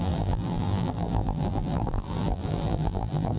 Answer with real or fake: fake